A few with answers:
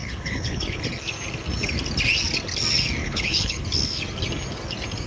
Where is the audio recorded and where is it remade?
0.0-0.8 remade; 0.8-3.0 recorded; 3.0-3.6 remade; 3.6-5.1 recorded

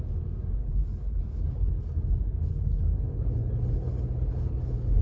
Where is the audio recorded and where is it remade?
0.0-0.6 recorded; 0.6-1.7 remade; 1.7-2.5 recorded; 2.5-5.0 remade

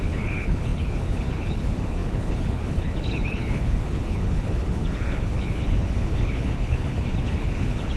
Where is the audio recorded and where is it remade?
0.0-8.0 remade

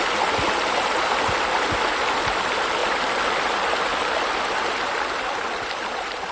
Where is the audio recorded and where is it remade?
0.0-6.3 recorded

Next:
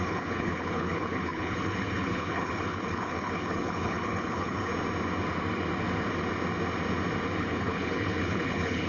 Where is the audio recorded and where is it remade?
0.0-4.7 remade; 4.7-7.4 recorded; 7.4-8.9 remade

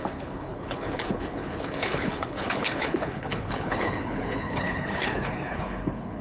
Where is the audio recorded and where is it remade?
0.0-6.2 remade